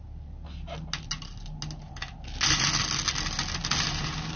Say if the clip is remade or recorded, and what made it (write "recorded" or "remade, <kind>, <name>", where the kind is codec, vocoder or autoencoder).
recorded